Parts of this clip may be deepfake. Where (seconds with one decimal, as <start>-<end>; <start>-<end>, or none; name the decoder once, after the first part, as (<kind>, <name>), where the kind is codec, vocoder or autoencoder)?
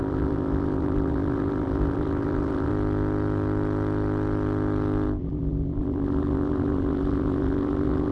0.0-2.7 (vocoder, BigVGAN v2); 5.2-8.1